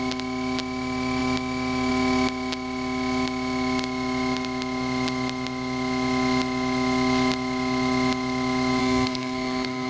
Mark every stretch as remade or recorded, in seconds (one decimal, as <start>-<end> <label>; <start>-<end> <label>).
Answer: 0.0-8.8 recorded; 8.8-9.9 remade